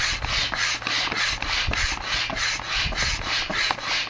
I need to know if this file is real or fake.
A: real